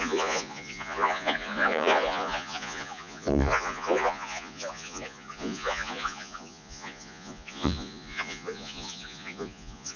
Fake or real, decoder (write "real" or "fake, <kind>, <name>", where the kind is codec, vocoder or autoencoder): fake, vocoder, Vocos